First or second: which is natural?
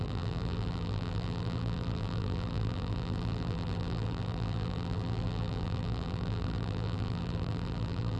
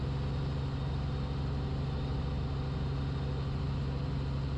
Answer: second